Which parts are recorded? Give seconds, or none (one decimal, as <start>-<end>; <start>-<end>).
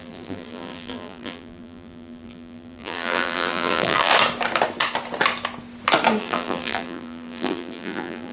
4.1-6.2